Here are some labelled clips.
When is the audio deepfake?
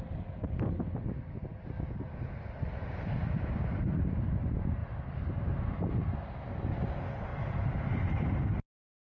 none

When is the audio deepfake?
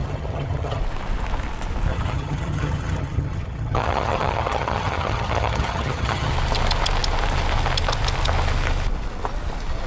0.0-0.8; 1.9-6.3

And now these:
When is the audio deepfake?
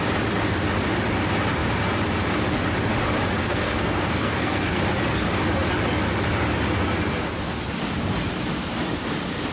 3.4-4.8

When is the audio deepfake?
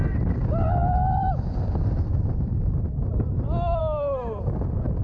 none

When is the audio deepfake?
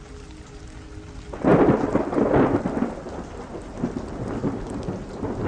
none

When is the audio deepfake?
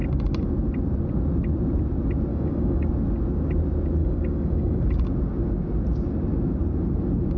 2.3-2.9; 4.0-4.8